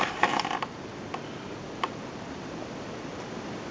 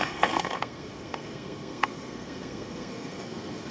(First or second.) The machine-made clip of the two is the second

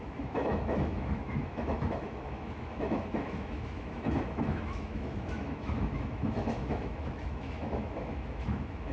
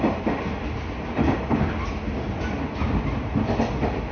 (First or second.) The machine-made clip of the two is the first